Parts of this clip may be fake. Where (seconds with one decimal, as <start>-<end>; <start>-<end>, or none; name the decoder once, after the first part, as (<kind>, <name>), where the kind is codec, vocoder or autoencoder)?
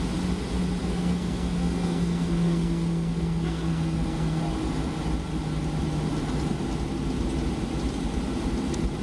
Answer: 0.8-4.4 (codec, SNAC)